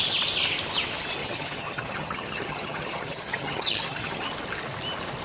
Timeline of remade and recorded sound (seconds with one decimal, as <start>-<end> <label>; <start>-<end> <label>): 0.0-1.2 recorded; 1.2-4.3 remade; 4.3-5.2 recorded